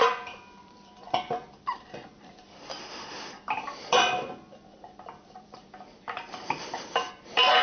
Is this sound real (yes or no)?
no